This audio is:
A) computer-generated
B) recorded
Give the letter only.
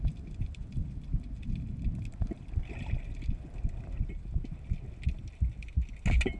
B